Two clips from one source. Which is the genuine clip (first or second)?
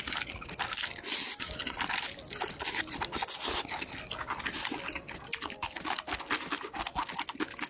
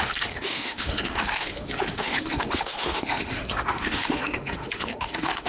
first